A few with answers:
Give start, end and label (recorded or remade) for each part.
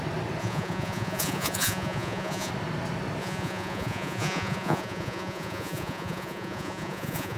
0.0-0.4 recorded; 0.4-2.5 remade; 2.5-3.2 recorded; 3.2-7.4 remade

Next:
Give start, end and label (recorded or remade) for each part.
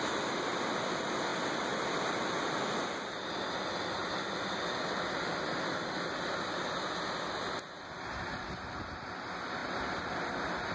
0.0-10.7 recorded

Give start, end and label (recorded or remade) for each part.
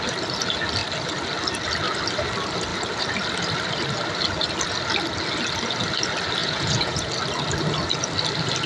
0.0-6.4 recorded; 6.4-7.1 remade; 7.1-8.7 recorded